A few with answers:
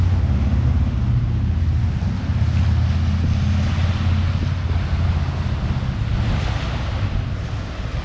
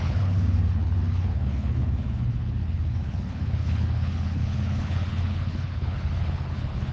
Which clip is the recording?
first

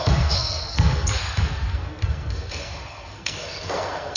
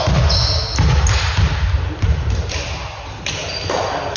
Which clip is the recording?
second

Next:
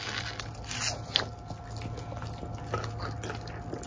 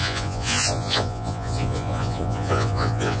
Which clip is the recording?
first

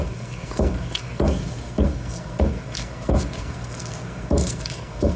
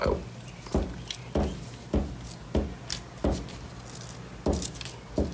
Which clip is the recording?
second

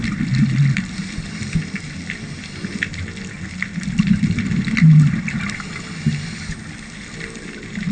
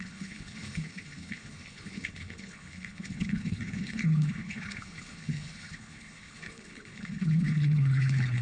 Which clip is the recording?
first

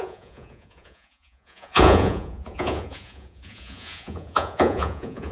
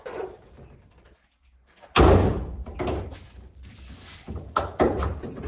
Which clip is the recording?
second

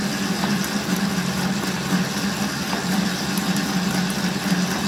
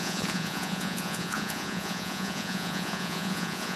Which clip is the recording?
first